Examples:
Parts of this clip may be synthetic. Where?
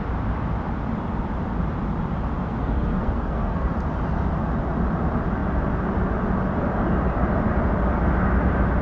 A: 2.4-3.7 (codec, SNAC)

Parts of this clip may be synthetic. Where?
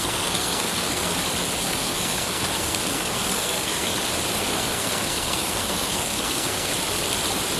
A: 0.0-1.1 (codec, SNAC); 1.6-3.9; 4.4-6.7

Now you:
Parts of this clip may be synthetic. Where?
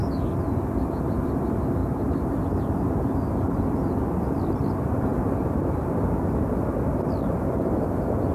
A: none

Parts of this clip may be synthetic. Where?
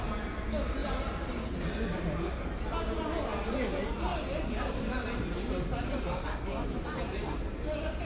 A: none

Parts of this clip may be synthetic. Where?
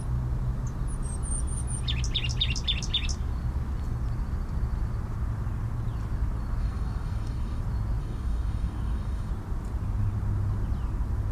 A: 6.6-7.6 (codec, SNAC); 8.0-9.3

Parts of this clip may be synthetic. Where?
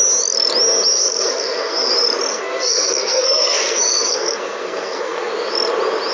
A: 1.0-1.9 (codec, SNAC); 2.3-5.3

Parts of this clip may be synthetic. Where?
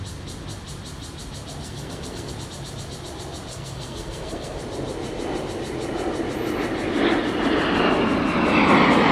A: 1.6-2.3 (codec, SNAC); 3.5-4.6